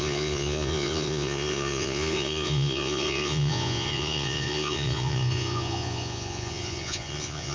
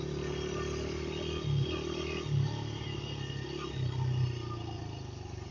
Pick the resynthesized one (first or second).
first